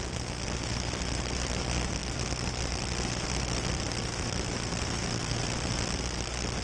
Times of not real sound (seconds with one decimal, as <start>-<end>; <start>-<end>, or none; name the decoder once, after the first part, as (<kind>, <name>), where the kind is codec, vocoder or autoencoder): none